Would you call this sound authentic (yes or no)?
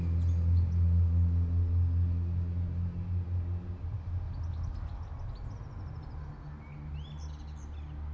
yes